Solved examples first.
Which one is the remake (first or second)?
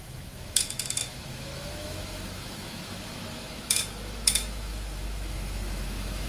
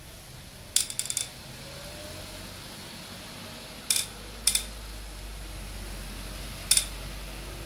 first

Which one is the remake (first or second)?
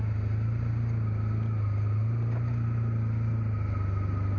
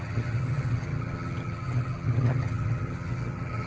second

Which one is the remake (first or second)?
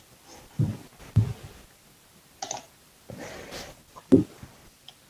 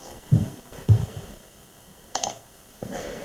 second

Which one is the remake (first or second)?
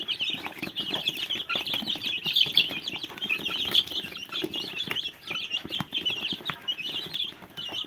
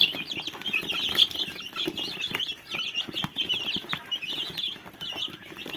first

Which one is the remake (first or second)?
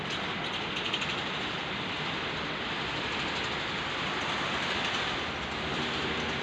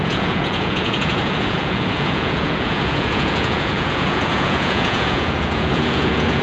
second